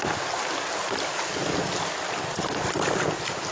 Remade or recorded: remade